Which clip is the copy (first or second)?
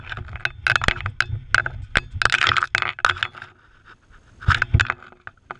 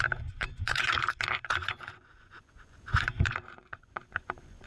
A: second